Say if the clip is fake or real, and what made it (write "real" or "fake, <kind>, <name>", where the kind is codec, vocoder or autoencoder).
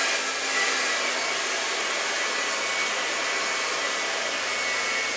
real